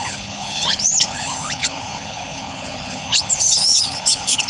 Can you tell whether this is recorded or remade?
remade